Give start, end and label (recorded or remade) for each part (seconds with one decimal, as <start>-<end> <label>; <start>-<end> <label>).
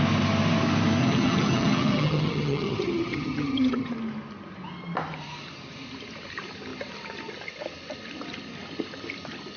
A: 0.0-1.0 recorded; 1.0-3.9 remade; 3.9-9.6 recorded